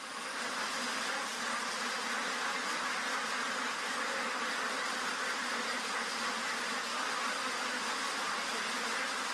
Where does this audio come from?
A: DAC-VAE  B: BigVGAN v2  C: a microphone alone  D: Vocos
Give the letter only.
B